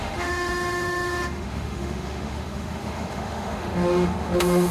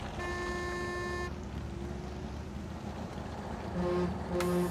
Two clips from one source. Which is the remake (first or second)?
first